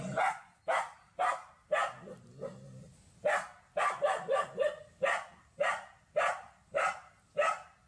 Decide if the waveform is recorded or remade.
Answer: recorded